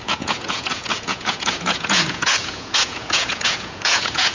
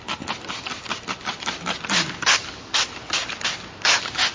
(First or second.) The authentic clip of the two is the second